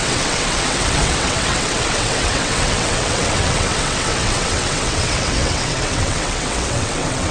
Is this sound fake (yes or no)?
yes